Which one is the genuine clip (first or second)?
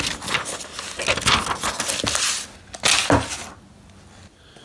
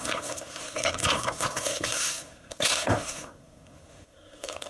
first